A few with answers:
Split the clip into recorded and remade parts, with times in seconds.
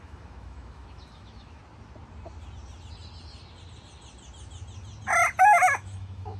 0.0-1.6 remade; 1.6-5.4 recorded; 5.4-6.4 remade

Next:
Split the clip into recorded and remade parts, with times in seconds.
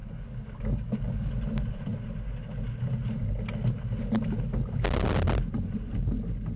0.0-1.3 remade; 1.3-6.6 recorded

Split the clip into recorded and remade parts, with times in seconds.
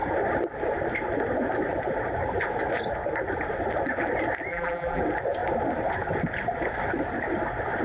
0.0-4.5 recorded; 4.5-5.0 remade; 5.0-7.8 recorded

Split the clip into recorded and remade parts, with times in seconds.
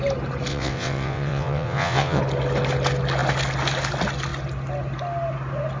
0.0-0.5 recorded; 0.5-2.2 remade; 2.2-5.8 recorded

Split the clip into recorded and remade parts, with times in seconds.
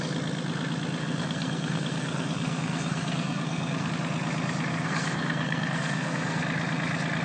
0.0-1.0 recorded; 1.0-3.9 remade; 3.9-4.7 recorded; 4.7-6.4 remade; 6.4-7.2 recorded